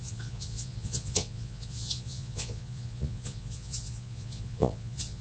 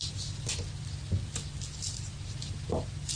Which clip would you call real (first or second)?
second